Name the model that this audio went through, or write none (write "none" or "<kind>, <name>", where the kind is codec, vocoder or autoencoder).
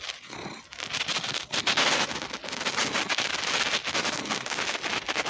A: none